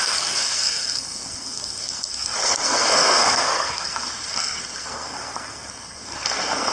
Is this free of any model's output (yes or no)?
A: no